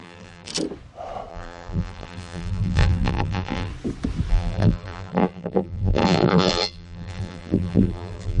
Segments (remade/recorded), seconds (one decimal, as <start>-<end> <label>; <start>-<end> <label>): 0.0-0.5 remade; 0.5-1.3 recorded; 1.3-3.7 remade; 3.7-4.3 recorded; 4.3-8.4 remade